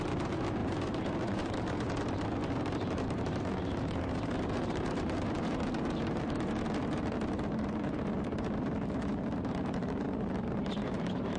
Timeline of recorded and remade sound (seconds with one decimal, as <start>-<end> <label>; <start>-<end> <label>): 0.0-11.4 remade